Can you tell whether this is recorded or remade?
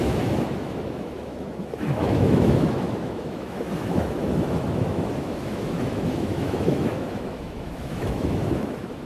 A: remade